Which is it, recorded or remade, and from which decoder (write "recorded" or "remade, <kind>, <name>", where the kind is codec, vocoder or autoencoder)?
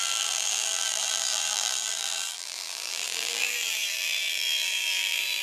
remade, vocoder, BigVGAN v2